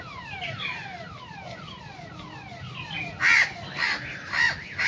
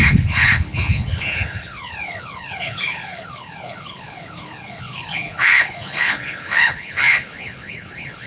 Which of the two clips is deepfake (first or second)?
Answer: second